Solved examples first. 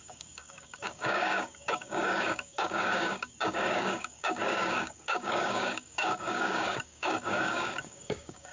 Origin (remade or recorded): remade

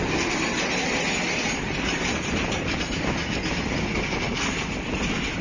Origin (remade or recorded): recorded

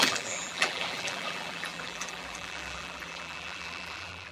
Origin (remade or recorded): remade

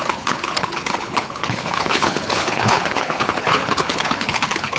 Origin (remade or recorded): remade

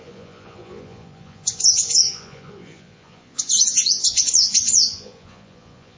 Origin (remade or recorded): remade